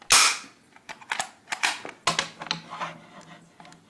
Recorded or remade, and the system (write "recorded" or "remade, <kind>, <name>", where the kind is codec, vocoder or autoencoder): recorded